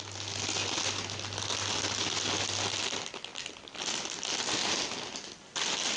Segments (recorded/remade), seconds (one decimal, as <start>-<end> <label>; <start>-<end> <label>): 0.0-6.0 recorded